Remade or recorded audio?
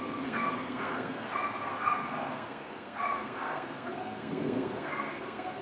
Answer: remade